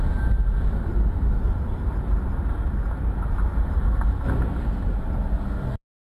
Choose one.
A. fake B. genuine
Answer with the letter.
B